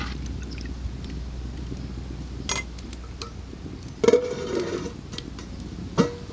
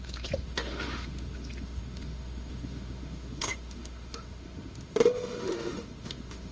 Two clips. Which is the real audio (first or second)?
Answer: first